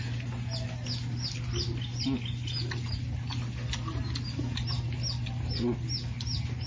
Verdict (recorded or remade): recorded